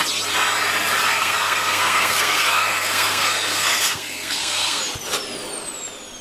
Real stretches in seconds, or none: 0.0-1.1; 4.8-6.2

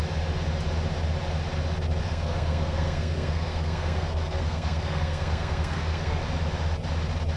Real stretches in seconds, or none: 0.0-2.0; 6.2-7.4